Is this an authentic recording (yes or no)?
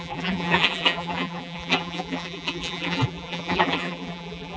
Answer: no